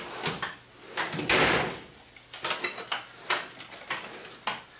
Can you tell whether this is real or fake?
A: real